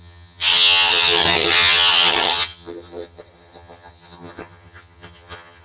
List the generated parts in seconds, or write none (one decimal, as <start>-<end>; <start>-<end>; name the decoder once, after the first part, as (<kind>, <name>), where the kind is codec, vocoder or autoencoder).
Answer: 0.0-5.6 (vocoder, HiFi-GAN)